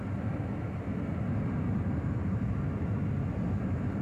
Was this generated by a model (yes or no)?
no